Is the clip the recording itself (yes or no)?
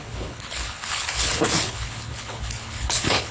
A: no